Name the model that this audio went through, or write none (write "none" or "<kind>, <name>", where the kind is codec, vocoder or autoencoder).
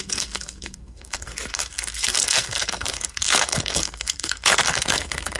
codec, SNAC